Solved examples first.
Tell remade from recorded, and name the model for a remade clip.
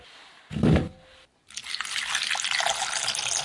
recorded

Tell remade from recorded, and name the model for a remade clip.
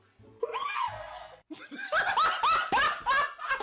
recorded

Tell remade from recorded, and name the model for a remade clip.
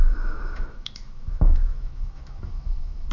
remade, autoencoder, DAC-VAE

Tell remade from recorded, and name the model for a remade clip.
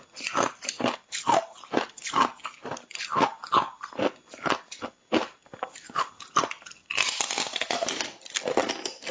recorded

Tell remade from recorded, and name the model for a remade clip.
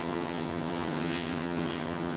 remade, vocoder, HiFi-GAN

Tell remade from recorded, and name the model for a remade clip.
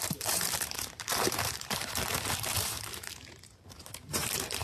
remade, vocoder, BigVGAN v2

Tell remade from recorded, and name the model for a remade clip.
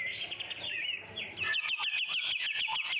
recorded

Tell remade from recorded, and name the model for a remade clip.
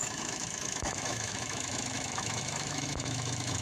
remade, autoencoder, DAC-VAE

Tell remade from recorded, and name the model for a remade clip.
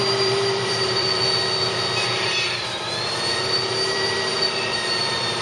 remade, vocoder, BigVGAN v2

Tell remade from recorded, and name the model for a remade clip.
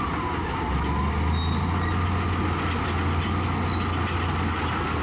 recorded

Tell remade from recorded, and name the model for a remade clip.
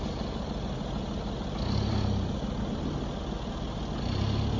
recorded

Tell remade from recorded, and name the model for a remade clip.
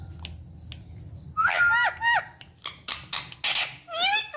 recorded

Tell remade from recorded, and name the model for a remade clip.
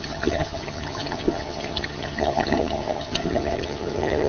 remade, vocoder, HiFi-GAN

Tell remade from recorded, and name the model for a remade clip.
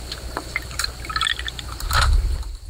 recorded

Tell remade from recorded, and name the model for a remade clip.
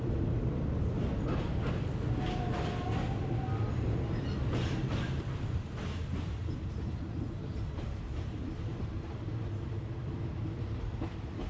recorded